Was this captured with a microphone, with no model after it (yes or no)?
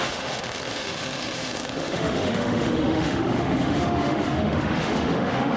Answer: no